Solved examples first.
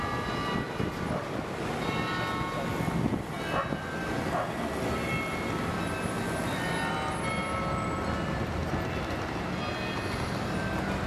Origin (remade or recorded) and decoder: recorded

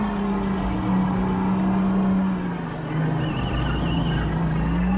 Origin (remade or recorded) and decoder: recorded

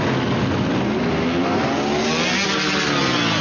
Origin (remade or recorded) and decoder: recorded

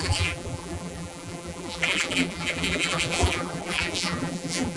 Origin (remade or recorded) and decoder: remade, vocoder, BigVGAN v2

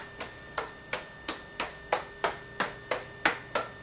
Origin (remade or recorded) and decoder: recorded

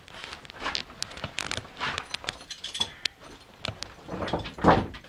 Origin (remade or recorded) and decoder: recorded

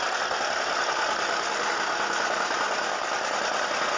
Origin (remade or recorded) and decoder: recorded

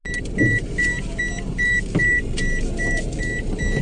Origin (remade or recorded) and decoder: recorded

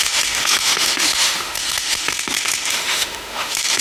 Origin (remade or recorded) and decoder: remade, autoencoder, DAC-VAE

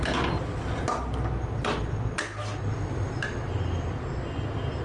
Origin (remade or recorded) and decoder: recorded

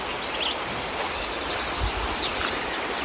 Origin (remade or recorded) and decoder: remade, vocoder, BigVGAN v2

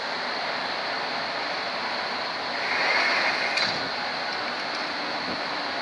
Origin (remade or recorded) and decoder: recorded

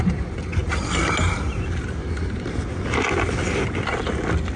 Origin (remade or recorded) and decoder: recorded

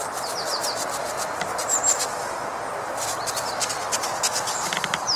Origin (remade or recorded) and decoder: recorded